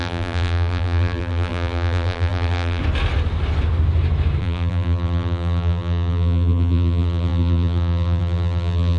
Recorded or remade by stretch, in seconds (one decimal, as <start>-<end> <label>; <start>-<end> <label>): 0.0-2.8 remade; 2.8-4.4 recorded; 4.4-9.0 remade